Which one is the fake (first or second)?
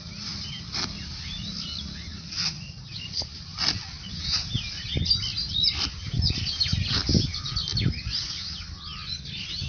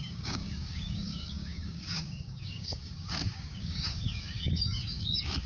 second